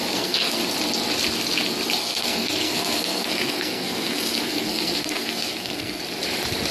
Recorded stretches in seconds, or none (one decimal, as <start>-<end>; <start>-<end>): 0.6-2.0; 6.0-6.7